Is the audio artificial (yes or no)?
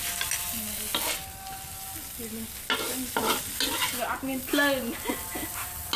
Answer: no